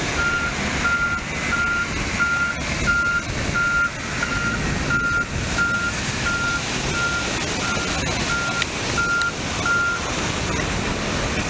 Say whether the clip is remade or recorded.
recorded